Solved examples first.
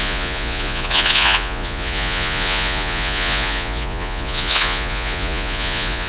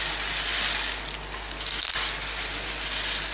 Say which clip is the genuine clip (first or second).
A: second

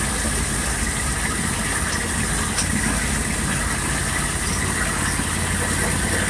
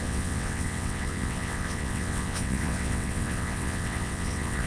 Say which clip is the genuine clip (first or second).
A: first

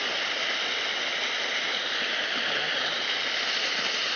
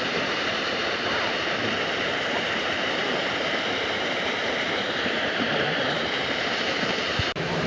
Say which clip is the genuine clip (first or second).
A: first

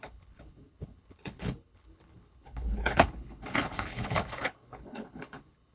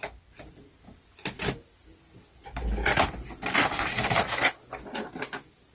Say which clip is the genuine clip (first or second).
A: second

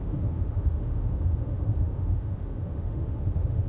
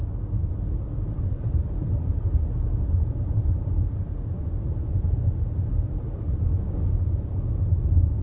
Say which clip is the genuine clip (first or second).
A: second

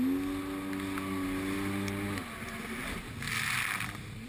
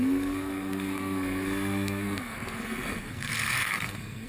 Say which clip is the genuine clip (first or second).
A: first